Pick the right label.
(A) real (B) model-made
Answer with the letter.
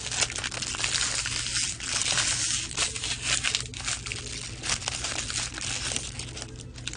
A